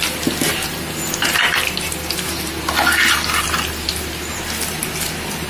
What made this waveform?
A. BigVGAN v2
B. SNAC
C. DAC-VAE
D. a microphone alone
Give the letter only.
D